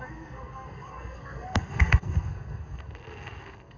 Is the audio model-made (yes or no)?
yes